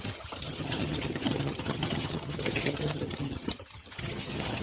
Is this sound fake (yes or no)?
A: yes